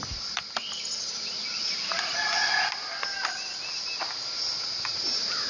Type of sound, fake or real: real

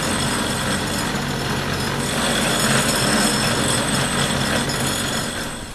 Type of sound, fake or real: real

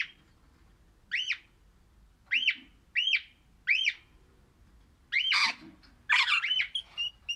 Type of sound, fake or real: real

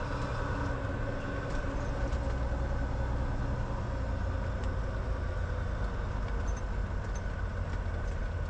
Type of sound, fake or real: real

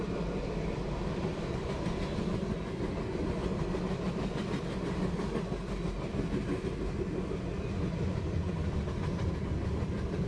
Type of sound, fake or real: real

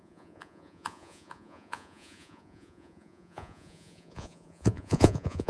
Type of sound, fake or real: fake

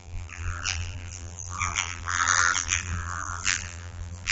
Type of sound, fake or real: fake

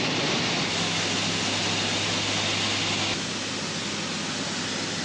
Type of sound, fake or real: real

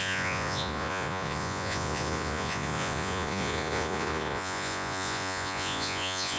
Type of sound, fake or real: fake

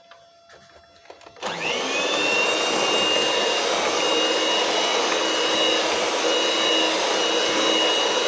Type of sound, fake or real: real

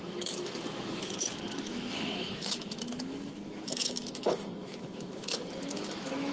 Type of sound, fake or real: fake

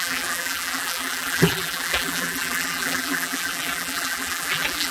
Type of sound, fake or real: fake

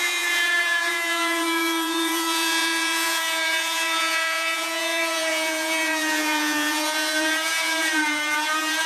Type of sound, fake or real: fake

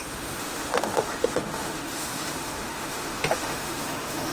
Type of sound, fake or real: fake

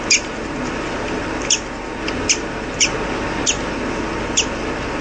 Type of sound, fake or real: real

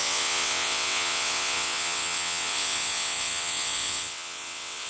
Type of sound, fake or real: fake